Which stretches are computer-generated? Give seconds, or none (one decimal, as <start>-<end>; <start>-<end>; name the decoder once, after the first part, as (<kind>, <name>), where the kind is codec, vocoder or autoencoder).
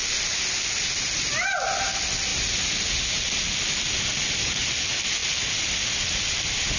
none